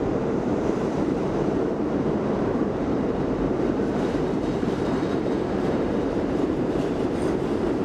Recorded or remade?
remade